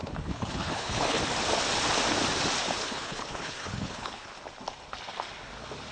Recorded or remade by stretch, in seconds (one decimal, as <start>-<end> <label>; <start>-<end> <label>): 0.0-1.2 remade; 1.2-2.8 recorded; 2.8-4.3 remade; 4.3-5.9 recorded